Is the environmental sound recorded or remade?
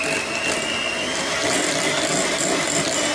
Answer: recorded